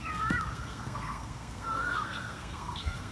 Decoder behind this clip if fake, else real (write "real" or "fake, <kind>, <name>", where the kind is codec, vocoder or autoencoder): fake, codec, SNAC